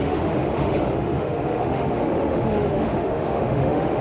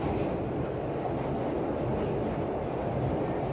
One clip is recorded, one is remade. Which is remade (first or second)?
first